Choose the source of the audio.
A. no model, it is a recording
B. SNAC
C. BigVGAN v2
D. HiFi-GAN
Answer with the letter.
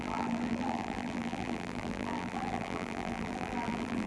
C